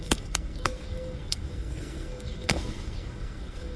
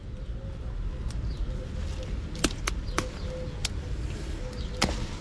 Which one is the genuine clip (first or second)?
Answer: second